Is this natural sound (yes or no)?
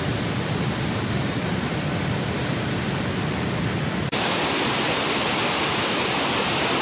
yes